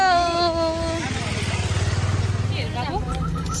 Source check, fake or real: real